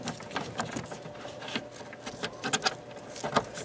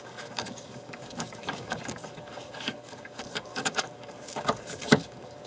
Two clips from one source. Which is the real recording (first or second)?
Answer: first